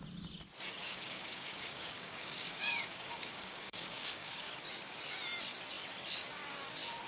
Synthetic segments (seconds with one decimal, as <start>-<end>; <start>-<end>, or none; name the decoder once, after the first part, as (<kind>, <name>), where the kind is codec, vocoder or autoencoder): 0.8-4.5 (codec, DAC)